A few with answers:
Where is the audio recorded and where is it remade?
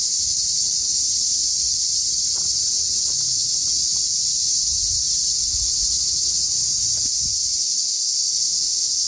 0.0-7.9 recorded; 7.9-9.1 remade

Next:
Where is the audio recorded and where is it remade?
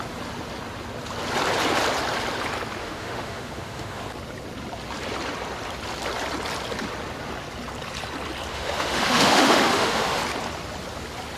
0.0-2.8 recorded; 2.8-4.0 remade; 4.0-8.5 recorded; 8.5-10.2 remade; 10.2-11.4 recorded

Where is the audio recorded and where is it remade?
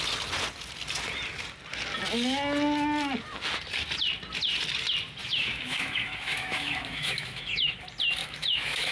0.0-5.2 recorded; 5.2-7.7 remade; 7.7-8.2 recorded; 8.2-8.9 remade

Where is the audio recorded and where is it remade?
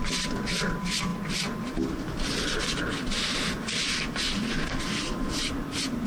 0.0-6.1 recorded